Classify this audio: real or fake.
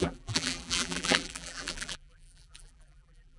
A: fake